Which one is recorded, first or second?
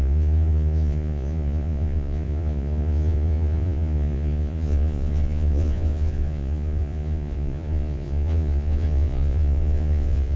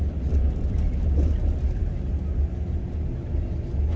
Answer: second